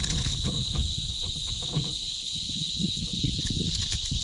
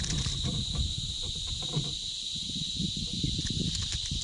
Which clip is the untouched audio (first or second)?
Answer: second